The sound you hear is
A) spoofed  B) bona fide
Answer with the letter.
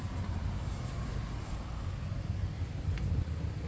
B